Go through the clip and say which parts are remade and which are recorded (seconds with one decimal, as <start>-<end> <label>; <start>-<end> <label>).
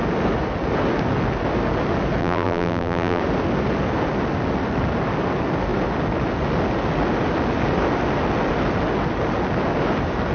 0.0-2.2 recorded; 2.2-3.2 remade; 3.2-10.3 recorded